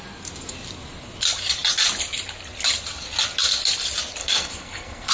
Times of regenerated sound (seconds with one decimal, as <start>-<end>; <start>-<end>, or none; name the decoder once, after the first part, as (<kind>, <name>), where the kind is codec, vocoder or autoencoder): 4.2-5.1 (codec, SNAC)